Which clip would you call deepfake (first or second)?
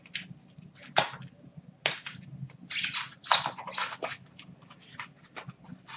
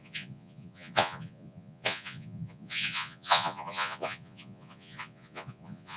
second